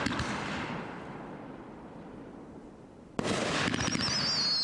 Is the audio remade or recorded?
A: recorded